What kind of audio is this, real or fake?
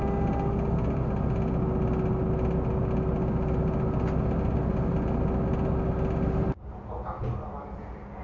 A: real